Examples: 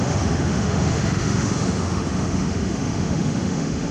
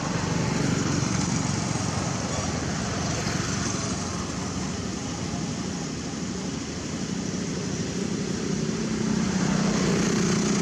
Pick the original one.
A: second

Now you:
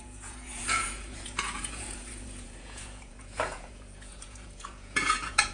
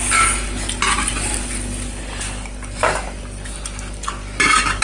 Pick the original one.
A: second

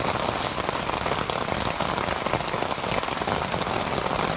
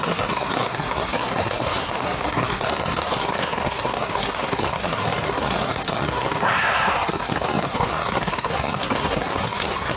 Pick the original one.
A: first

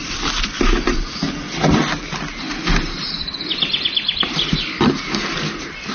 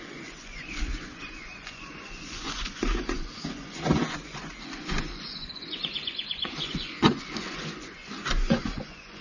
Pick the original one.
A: first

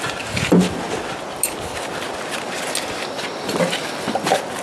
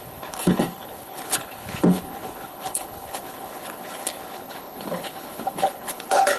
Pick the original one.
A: first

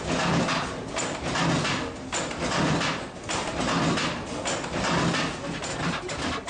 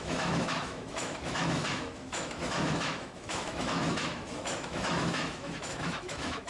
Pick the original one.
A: first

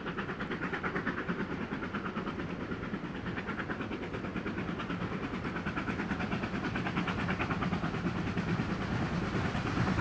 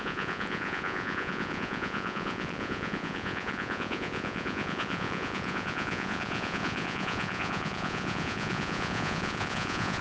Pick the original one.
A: first